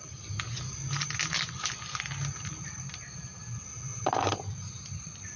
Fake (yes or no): no